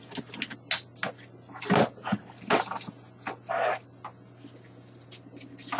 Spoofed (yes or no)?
no